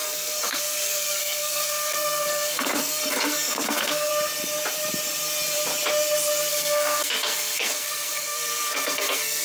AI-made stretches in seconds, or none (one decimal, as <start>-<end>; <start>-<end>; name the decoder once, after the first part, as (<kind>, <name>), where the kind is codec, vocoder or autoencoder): 0.0-4.1 (codec, SNAC); 6.5-9.4